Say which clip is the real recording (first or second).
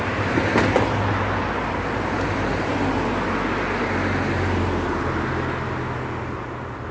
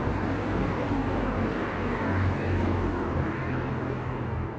first